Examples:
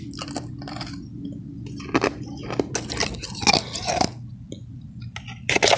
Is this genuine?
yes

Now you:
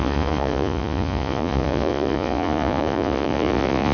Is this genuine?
no